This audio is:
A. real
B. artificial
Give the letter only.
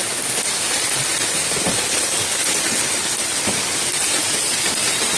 A